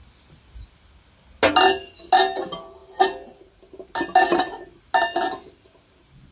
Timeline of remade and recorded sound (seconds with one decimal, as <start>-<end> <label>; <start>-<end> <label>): 0.0-6.3 recorded